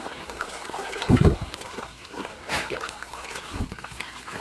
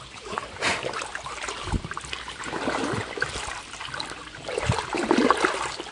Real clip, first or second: second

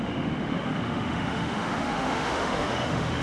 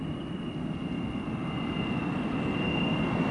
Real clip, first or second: second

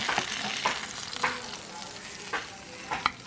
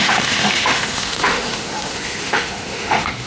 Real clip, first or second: first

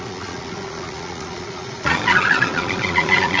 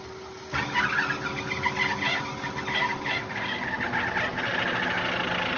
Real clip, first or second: second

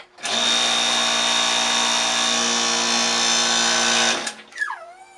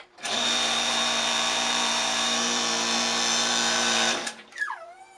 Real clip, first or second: first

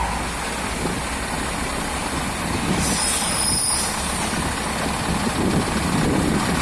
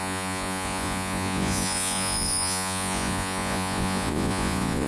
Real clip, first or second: first